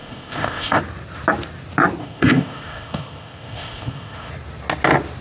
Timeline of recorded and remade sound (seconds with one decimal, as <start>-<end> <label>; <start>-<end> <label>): 0.0-0.8 remade; 0.8-2.0 recorded; 2.0-4.3 remade; 4.3-5.2 recorded